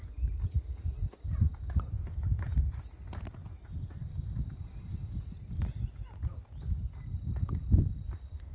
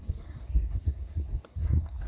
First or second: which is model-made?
second